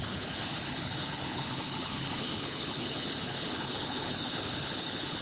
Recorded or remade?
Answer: remade